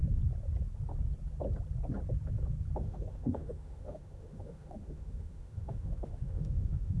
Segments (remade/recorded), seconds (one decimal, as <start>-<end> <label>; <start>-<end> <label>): 0.0-2.8 recorded; 2.8-7.0 remade